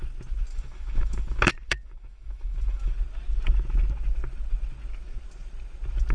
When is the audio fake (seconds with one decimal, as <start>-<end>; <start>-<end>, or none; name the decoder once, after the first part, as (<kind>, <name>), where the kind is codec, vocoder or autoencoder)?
0.5-2.9 (autoencoder, DAC-VAE)